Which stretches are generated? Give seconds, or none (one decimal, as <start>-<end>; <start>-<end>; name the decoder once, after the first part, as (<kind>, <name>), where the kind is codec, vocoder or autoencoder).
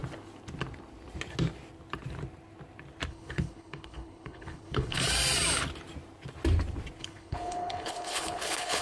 3.1-5.0 (codec, HILCodec); 7.0-8.8